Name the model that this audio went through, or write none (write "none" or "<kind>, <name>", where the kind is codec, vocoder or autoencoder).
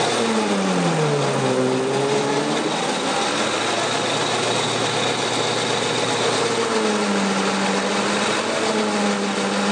none